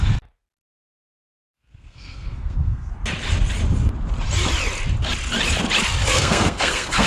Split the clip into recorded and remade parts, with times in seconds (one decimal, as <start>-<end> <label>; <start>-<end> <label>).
0.0-1.3 recorded; 1.3-2.9 remade; 2.9-6.1 recorded; 6.1-7.1 remade